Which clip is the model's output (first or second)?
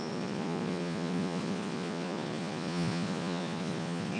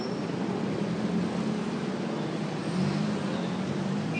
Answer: first